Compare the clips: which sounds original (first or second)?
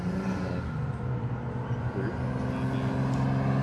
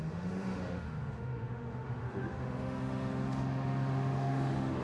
first